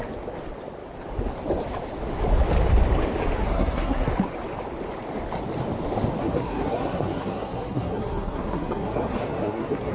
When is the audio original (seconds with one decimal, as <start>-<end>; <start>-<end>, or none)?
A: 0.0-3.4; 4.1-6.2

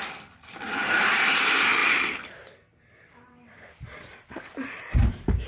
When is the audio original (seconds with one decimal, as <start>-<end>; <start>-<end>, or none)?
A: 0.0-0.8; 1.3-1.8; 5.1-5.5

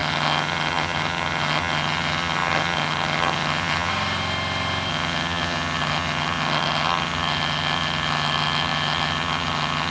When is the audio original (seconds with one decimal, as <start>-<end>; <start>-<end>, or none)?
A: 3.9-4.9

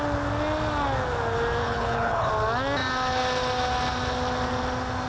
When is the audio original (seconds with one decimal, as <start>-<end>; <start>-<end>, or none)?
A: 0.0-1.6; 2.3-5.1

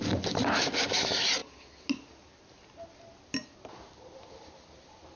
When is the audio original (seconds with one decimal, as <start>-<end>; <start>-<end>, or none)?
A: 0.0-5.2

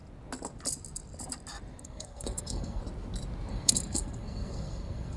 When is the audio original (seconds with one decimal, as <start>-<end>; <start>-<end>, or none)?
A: 0.0-1.8; 2.8-3.5